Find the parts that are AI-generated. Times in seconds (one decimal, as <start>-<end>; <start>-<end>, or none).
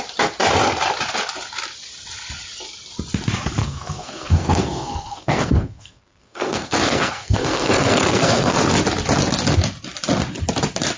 3.6-8.6